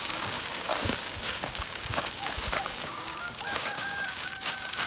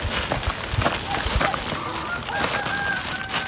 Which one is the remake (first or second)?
first